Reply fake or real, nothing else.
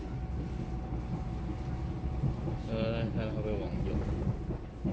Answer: real